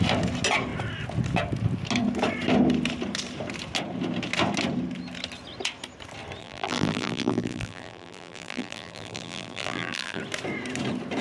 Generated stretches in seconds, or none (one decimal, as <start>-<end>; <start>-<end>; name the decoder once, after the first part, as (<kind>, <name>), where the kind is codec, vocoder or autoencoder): 6.4-10.2 (vocoder, BigVGAN v2)